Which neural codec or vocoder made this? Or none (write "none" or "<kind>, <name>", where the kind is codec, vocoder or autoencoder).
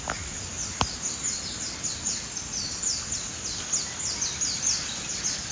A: none